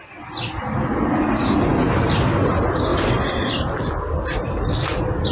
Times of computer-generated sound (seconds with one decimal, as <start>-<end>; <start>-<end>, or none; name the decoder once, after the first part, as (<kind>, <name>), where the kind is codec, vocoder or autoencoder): none